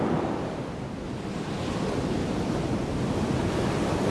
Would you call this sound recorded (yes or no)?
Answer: no